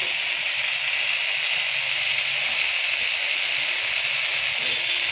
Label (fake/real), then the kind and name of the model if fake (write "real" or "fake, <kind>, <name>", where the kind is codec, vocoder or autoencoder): real